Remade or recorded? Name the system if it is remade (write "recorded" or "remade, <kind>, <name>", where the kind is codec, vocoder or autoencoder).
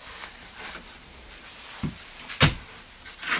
recorded